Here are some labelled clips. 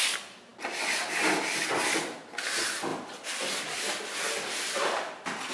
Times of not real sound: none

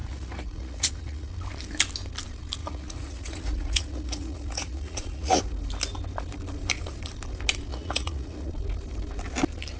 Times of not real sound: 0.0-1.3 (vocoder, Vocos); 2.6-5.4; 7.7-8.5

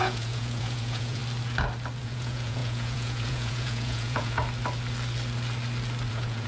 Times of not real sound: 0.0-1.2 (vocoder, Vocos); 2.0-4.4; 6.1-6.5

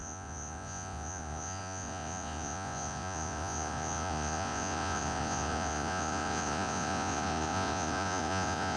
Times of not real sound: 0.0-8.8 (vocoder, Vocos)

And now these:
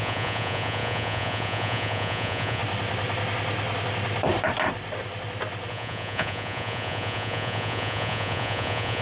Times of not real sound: 0.0-2.6 (vocoder, Vocos); 5.7-9.0

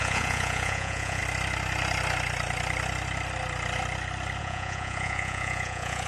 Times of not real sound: 0.0-1.2 (vocoder, Vocos); 4.4-6.1

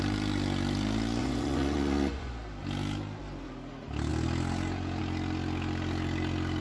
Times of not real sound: 1.2-2.3 (vocoder, Vocos)